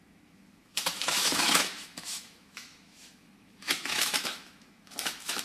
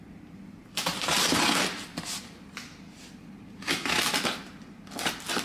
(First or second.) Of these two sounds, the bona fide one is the second